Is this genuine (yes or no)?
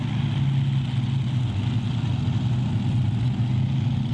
yes